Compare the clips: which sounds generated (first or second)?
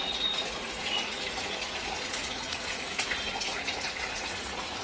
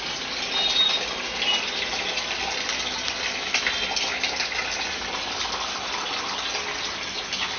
first